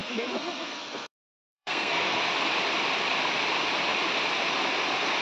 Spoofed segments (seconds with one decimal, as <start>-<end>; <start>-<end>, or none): 0.0-2.2